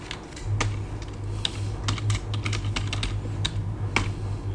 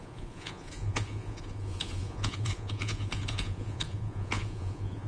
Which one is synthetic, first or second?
second